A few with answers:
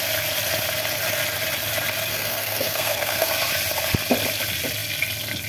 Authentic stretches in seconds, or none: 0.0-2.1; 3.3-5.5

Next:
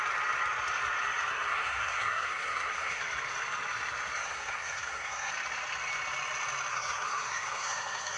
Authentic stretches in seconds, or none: 0.0-1.3; 3.0-4.2; 5.3-6.7

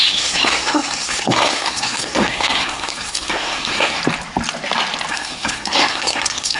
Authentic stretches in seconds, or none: 4.0-5.1

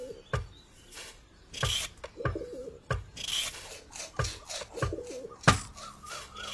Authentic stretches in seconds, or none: 0.0-6.5

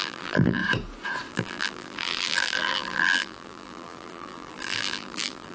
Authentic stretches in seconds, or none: 0.6-1.3

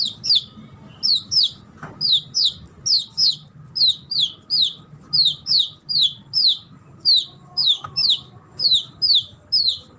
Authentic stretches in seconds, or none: 0.0-1.1; 1.6-7.5; 8.3-10.0

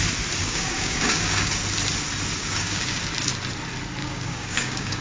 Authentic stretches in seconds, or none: 0.0-0.4; 1.5-2.4; 3.0-4.0